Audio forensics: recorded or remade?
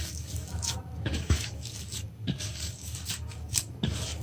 remade